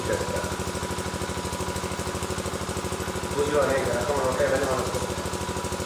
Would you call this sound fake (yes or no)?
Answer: no